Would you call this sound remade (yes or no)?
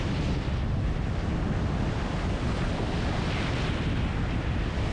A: no